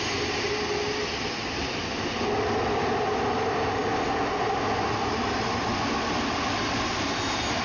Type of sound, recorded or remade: recorded